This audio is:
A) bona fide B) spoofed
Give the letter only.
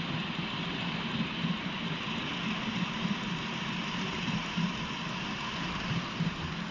A